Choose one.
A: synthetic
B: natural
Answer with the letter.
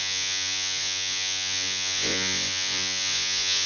A